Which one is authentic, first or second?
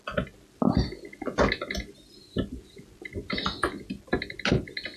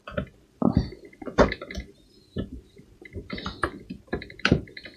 first